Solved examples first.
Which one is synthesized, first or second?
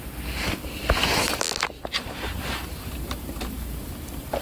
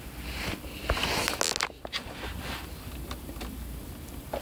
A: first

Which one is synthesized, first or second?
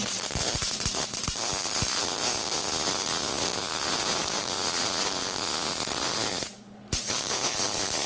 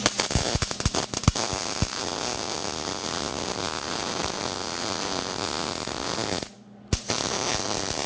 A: first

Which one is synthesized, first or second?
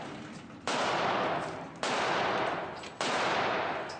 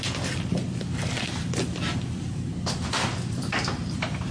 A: second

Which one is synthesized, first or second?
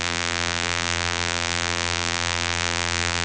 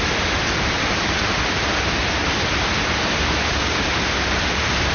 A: first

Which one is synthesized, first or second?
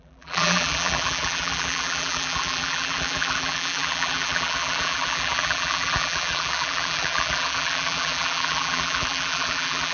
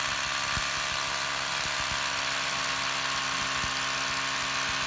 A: first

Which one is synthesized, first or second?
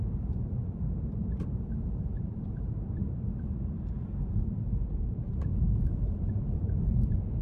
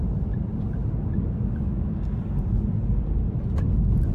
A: first